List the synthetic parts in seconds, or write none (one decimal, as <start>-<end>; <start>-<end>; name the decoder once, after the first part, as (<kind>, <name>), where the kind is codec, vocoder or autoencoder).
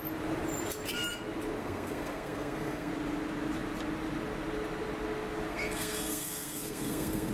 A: 1.6-2.9 (codec, SNAC); 5.5-7.3